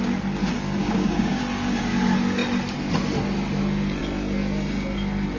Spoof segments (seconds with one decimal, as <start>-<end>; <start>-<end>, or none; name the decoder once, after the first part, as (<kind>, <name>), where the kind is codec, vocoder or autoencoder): 0.8-1.4 (codec, DAC)